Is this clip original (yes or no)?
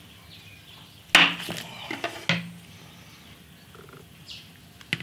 yes